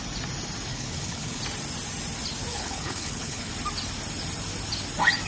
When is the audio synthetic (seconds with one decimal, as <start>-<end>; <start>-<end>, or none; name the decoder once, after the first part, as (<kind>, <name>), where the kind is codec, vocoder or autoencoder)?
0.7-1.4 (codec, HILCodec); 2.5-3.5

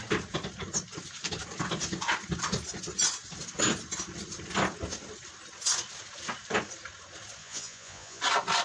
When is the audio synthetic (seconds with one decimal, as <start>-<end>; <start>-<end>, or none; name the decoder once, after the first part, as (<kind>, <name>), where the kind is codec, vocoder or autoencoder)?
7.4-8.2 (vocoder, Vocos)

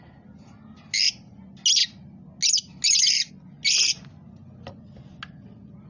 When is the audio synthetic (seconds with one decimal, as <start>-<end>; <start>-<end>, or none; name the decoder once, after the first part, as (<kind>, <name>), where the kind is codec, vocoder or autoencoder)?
none

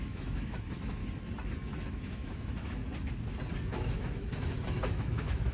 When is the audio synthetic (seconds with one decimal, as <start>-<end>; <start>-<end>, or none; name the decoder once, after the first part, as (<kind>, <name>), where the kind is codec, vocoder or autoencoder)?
0.0-1.0 (autoencoder, DAC-VAE); 1.9-2.8; 4.0-5.5

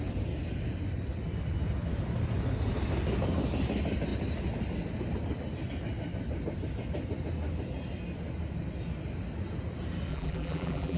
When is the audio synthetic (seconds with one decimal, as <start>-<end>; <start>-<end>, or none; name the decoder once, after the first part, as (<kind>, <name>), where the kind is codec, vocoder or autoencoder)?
10.1-11.0 (vocoder, BigVGAN v2)